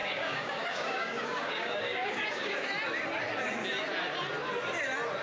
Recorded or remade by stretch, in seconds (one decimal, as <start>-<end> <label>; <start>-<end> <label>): 0.0-2.7 remade; 2.7-5.2 recorded